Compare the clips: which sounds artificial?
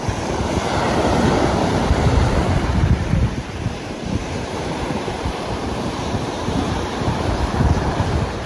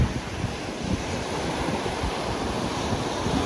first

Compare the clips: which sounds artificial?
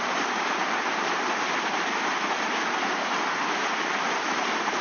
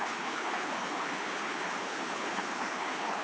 second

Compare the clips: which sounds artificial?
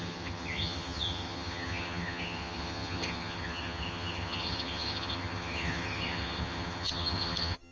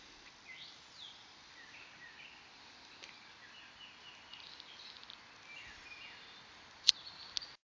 first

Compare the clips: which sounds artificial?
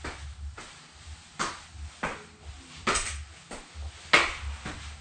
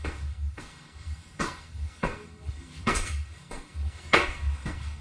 second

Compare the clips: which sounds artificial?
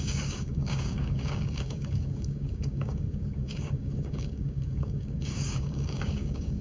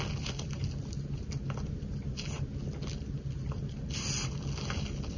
first